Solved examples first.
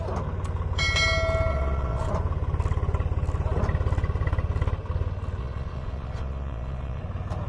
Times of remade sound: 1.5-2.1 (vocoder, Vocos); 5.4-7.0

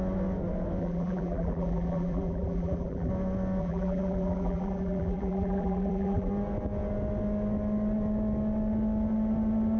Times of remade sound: 0.8-3.1 (vocoder, BigVGAN v2); 3.6-6.3

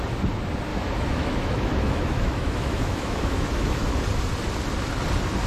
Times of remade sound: 0.7-4.0 (autoencoder, DAC-VAE)

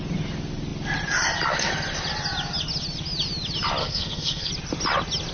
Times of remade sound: 3.8-4.5 (codec, SNAC)

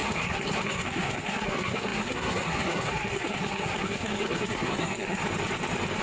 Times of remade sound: 0.0-5.2 (codec, SNAC)